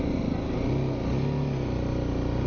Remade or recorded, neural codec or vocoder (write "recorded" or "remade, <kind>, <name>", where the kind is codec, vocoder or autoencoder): recorded